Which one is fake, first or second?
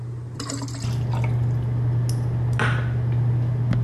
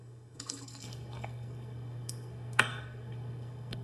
second